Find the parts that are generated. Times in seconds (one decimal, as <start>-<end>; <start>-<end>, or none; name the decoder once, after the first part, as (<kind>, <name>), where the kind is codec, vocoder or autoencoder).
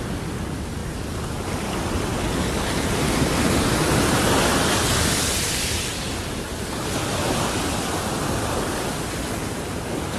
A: none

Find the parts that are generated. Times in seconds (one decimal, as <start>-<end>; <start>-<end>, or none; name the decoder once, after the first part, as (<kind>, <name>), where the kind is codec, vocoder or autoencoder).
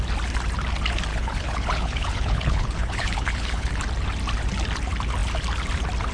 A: 1.1-3.7 (codec, HILCodec)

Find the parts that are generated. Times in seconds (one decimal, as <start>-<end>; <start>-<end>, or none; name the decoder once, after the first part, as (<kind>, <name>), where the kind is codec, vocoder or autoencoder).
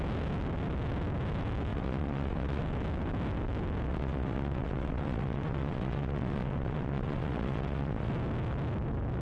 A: 1.7-2.6 (vocoder, WaveNeXt); 3.9-8.1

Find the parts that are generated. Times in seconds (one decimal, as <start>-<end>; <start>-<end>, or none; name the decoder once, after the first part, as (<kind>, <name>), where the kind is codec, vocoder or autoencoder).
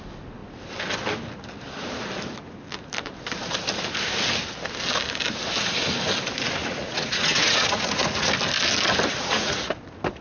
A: 6.6-8.3 (vocoder, Vocos); 9.1-9.7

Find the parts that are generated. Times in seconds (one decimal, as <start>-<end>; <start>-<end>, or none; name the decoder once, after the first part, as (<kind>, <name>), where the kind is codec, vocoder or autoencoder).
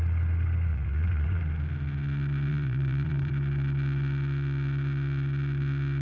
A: 0.7-1.4 (vocoder, Vocos); 2.5-3.3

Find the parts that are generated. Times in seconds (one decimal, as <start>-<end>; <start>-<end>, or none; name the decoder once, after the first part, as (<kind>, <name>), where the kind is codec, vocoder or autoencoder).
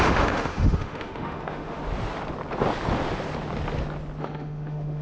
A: 0.0-1.8 (autoencoder, DAC-VAE); 4.2-5.0